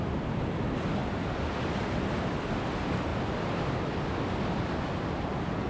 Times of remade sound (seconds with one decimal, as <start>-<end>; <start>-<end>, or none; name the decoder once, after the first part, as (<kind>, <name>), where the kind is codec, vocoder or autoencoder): none